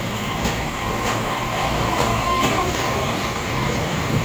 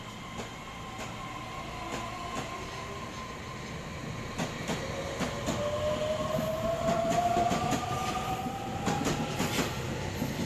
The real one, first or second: second